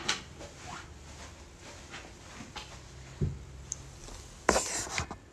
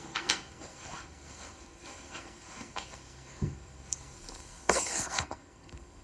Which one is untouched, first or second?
first